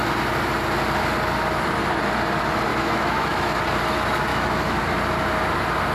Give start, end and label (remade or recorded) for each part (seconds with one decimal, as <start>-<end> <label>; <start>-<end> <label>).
0.0-2.7 recorded; 2.7-3.6 remade; 3.6-4.3 recorded; 4.3-4.8 remade; 4.8-5.9 recorded